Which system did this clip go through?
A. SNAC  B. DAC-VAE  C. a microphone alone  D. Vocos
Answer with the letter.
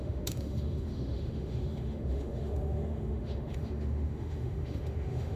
B